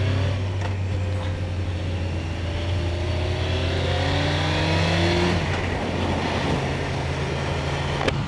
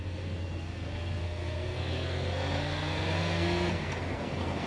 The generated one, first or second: second